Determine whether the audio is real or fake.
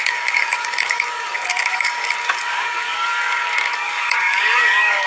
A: fake